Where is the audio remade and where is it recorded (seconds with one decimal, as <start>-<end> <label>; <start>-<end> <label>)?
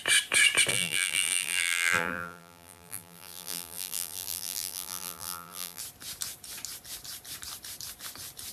0.0-0.7 recorded; 0.7-5.8 remade; 5.8-8.5 recorded